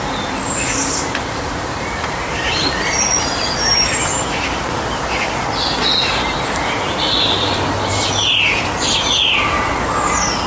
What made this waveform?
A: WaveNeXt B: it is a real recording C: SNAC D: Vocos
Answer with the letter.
B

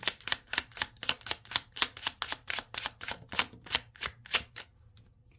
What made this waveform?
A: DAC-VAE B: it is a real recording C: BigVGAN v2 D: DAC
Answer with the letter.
B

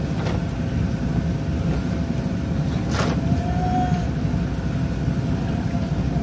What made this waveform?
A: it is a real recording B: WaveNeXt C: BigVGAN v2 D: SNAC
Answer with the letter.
A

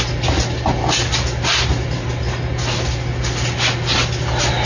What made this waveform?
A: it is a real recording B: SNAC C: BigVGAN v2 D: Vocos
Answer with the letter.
A